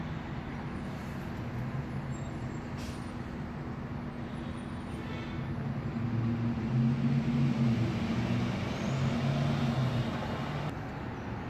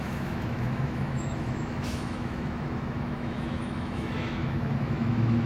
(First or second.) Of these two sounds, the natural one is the first